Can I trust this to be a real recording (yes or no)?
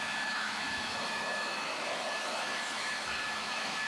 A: no